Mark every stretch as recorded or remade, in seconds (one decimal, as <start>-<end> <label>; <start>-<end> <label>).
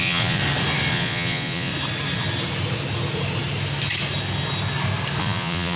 0.0-0.4 remade; 0.4-0.9 recorded; 0.9-1.7 remade; 1.7-5.2 recorded; 5.2-5.8 remade